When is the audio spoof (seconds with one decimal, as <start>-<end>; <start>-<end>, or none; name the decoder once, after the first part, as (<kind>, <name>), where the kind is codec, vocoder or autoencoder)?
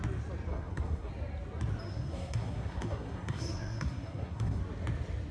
0.5-1.1 (codec, SNAC); 1.9-4.6